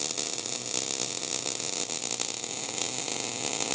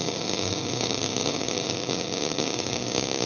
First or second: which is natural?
first